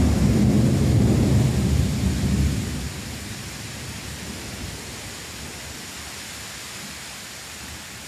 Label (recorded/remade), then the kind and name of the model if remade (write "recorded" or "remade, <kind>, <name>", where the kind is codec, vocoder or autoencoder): recorded